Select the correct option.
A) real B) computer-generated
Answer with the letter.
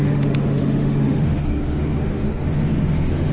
B